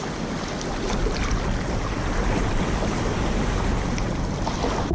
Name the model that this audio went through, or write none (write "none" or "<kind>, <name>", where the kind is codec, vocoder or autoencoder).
none